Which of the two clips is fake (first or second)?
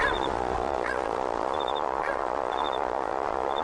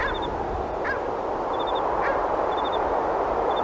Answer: first